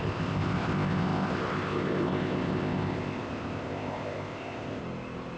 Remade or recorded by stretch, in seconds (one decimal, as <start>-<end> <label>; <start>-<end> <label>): 0.0-4.8 remade; 4.8-5.4 recorded